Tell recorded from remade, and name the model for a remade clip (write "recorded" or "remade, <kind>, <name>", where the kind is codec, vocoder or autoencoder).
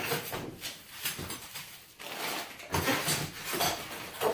recorded